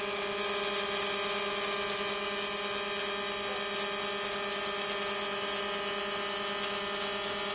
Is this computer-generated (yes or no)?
no